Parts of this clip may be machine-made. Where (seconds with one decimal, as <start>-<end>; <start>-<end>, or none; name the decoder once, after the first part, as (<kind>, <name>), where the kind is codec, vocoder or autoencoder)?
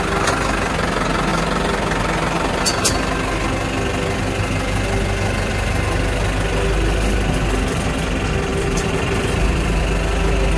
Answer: 1.3-2.6 (vocoder, BigVGAN v2); 8.5-9.8